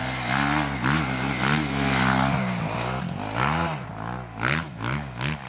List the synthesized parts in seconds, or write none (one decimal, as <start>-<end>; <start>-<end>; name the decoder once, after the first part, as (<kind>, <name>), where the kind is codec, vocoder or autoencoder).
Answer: none